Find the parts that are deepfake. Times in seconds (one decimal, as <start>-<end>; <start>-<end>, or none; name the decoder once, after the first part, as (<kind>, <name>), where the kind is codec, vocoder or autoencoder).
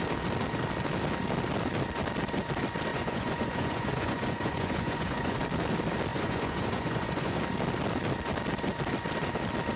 2.9-5.4 (vocoder, Vocos); 6.1-7.4